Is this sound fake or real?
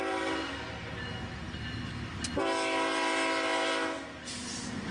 real